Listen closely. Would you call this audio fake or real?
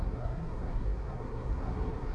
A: fake